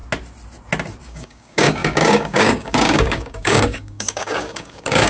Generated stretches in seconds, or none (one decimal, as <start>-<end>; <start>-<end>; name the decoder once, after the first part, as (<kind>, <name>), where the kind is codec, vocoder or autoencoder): 1.0-5.1 (codec, DAC)